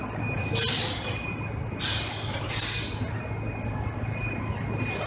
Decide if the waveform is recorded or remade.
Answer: recorded